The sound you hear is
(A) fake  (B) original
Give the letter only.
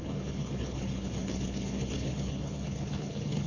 A